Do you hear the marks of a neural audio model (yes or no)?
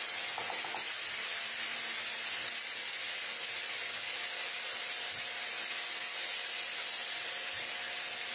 no